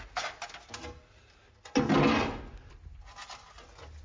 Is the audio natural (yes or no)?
yes